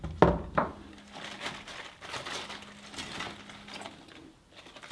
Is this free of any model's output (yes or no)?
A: yes